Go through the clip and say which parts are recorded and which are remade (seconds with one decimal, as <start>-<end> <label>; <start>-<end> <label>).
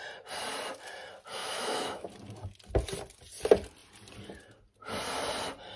0.0-1.4 recorded; 1.4-2.1 remade; 2.1-5.8 recorded